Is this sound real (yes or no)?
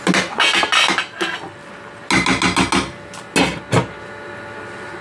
yes